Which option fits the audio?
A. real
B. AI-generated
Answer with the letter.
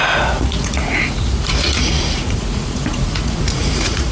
B